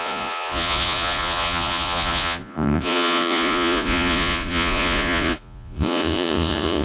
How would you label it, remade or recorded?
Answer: remade